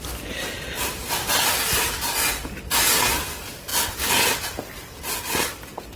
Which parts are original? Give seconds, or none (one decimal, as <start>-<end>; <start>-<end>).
0.0-6.0